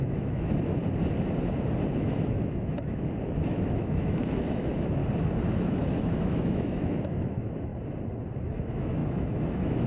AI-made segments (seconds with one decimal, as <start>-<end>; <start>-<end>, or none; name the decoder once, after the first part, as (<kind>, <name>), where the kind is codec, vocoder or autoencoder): 0.0-0.8 (autoencoder, DAC-VAE); 2.0-5.0; 5.5-7.7; 8.4-9.9